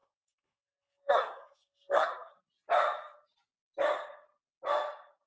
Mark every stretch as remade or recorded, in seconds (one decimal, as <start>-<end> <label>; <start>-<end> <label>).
0.0-2.3 remade; 2.3-5.3 recorded